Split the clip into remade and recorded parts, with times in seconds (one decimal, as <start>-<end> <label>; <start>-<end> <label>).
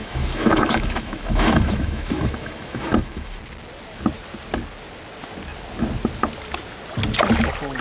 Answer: 0.0-3.4 remade; 3.4-7.8 recorded